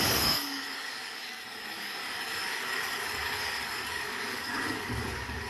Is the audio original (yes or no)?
no